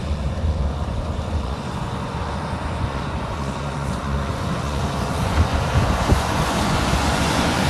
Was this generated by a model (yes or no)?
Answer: yes